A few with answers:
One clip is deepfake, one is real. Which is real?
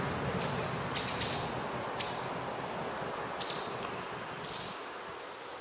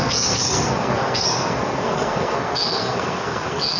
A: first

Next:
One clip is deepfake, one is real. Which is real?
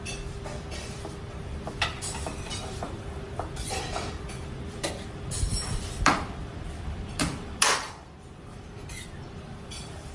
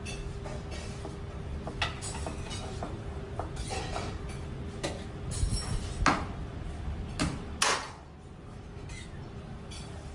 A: second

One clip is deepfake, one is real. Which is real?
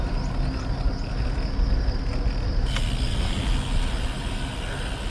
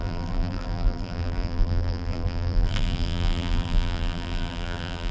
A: first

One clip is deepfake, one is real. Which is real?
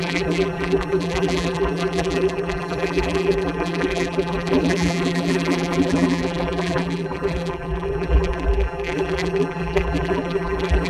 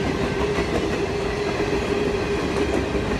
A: second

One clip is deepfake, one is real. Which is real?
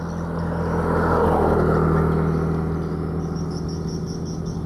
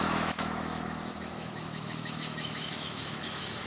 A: first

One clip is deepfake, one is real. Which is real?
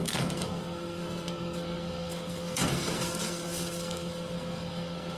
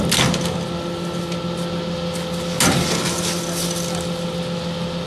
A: second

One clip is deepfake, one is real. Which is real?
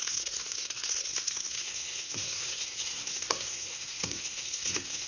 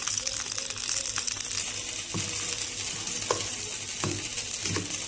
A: second